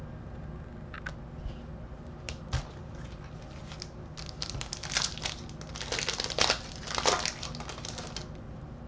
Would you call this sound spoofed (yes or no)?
no